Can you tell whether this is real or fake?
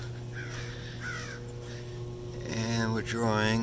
real